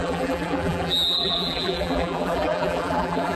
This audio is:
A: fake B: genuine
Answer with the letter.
A